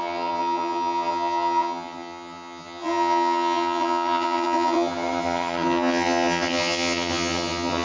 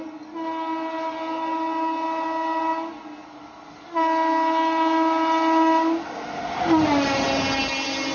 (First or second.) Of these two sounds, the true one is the second